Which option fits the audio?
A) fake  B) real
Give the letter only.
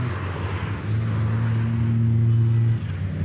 B